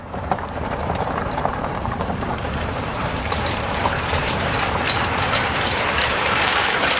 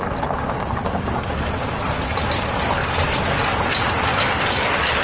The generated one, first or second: first